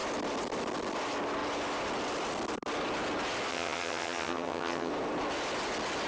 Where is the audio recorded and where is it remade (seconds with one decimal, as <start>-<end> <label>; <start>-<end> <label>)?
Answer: 0.0-3.5 recorded; 3.5-4.9 remade; 4.9-6.1 recorded